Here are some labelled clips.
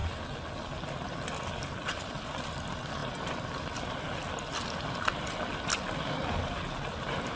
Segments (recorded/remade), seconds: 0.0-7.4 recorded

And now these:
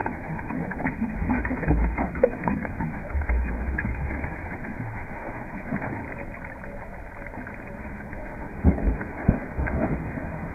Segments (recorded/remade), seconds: 0.0-6.0 remade; 6.0-7.8 recorded; 7.8-10.5 remade

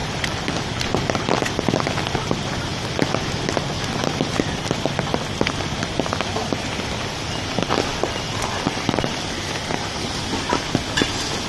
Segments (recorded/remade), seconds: 0.0-1.5 remade; 1.5-7.9 recorded; 7.9-10.0 remade; 10.0-11.5 recorded

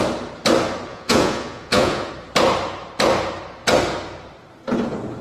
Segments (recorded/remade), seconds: 0.0-0.9 recorded; 0.9-2.1 remade; 2.1-5.2 recorded

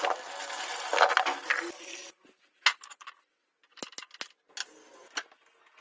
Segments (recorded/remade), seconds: 0.0-5.8 recorded

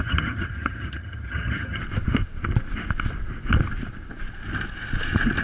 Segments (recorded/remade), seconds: 0.0-1.8 remade; 1.8-5.4 recorded